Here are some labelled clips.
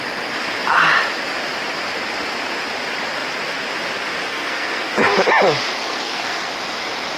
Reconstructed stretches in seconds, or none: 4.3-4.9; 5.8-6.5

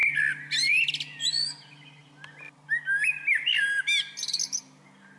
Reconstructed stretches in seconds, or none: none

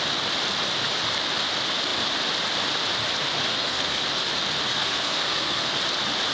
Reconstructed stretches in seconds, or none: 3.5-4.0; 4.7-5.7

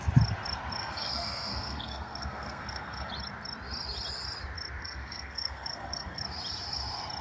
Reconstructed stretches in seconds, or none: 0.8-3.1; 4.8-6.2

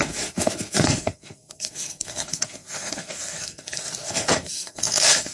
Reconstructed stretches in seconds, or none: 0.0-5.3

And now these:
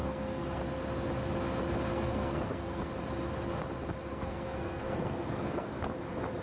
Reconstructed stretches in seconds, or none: 0.0-0.6; 1.9-2.9; 4.1-5.8

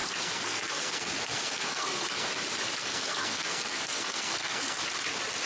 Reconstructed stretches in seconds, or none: 0.0-2.3; 2.8-4.8